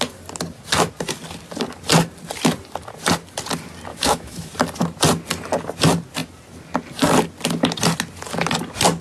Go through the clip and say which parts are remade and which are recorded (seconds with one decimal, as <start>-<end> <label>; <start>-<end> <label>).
0.0-3.9 recorded; 3.9-4.5 remade; 4.5-9.0 recorded